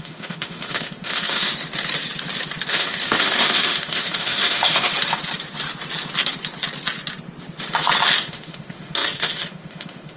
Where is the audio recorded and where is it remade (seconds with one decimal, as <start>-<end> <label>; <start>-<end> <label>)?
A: 0.0-1.5 remade; 1.5-2.7 recorded; 2.7-4.9 remade; 4.9-8.2 recorded; 8.2-10.2 remade

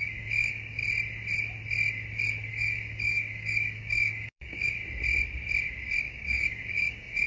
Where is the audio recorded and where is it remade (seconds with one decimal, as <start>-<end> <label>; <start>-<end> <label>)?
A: 0.0-0.8 remade; 0.8-2.5 recorded; 2.5-4.8 remade; 4.8-6.0 recorded; 6.0-7.3 remade

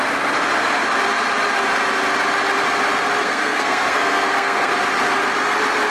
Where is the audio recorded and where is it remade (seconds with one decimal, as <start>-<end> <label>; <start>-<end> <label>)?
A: 0.0-3.2 recorded; 3.2-4.7 remade; 4.7-5.9 recorded

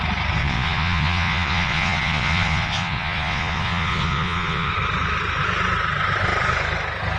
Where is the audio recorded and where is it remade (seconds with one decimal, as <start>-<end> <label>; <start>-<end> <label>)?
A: 0.0-0.4 recorded; 0.4-4.7 remade; 4.7-7.2 recorded

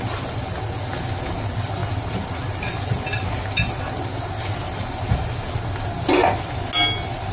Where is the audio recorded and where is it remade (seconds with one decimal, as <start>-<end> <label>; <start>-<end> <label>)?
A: 0.0-7.3 recorded

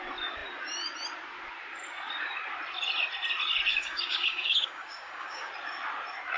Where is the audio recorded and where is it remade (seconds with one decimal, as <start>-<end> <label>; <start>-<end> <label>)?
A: 0.0-3.7 recorded; 3.7-5.5 remade; 5.5-6.4 recorded

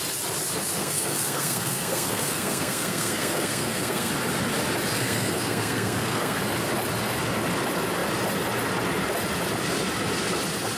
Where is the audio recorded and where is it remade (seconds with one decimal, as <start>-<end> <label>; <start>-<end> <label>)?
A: 0.0-0.8 recorded; 0.8-4.1 remade; 4.1-4.9 recorded; 4.9-6.4 remade; 6.4-10.8 recorded

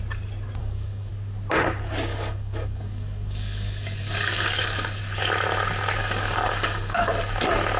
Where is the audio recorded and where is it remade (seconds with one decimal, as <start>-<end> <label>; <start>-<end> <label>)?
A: 0.0-0.6 recorded; 0.6-1.1 remade; 1.1-2.1 recorded; 2.1-5.0 remade; 5.0-6.0 recorded; 6.0-7.1 remade; 7.1-7.8 recorded